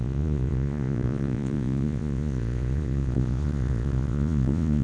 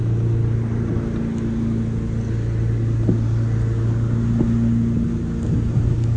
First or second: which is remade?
first